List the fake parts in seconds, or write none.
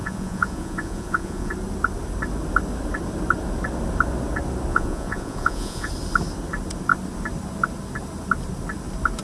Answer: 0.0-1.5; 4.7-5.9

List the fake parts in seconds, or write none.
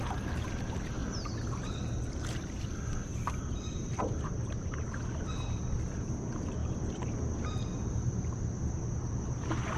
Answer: 1.0-4.0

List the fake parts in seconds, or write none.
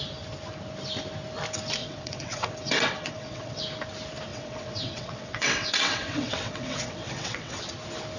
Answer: 1.8-3.6; 4.3-7.6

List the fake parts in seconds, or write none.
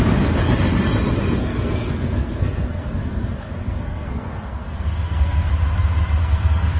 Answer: 1.4-5.5; 6.2-6.8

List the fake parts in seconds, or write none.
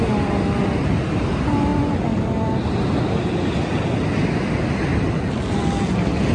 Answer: none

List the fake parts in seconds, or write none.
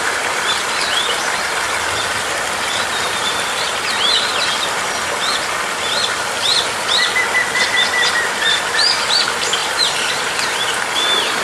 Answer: 0.0-5.0; 5.7-6.5; 7.4-11.4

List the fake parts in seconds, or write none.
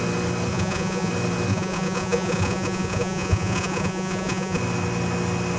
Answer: 0.5-1.1; 1.5-4.6